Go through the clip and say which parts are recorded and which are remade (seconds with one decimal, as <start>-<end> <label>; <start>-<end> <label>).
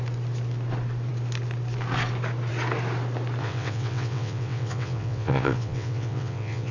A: 0.0-3.4 recorded; 3.4-6.7 remade